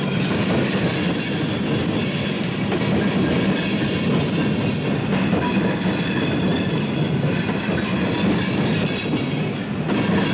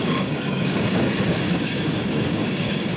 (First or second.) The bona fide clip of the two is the first